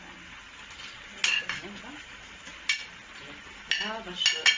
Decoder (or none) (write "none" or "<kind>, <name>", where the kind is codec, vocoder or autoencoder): none